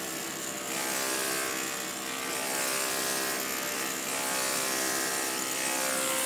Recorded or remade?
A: recorded